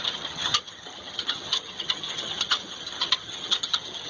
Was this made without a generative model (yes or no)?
no